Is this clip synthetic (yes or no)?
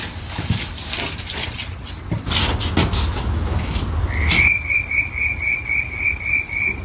no